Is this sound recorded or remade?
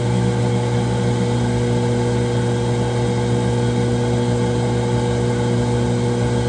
recorded